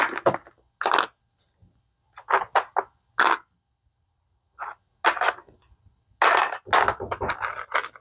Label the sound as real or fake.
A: real